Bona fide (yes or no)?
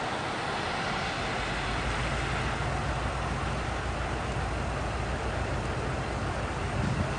yes